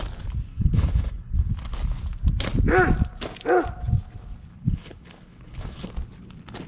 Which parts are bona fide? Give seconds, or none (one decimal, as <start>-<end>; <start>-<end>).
0.0-0.5; 1.5-4.5; 5.9-6.7